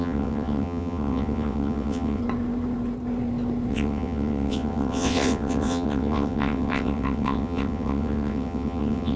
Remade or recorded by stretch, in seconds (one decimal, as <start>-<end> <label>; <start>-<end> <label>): 0.0-2.2 remade; 2.2-3.7 recorded; 3.7-9.2 remade